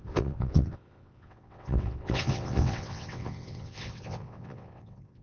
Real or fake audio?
fake